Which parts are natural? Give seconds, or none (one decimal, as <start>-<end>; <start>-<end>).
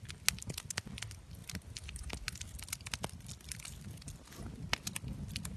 0.0-5.6